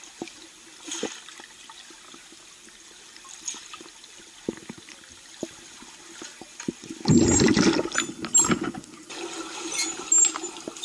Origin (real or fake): real